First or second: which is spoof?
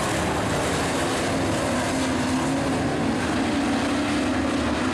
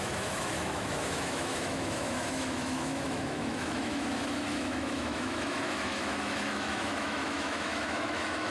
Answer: second